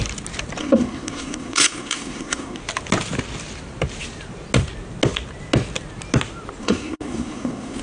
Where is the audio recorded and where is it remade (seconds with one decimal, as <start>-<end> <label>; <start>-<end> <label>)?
0.0-0.6 recorded; 0.6-2.6 remade; 2.6-6.6 recorded; 6.6-7.8 remade